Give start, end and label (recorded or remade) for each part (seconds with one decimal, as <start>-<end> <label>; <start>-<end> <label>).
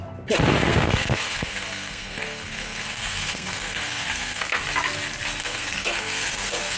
0.0-0.7 recorded; 0.7-4.6 remade; 4.6-5.4 recorded; 5.4-6.8 remade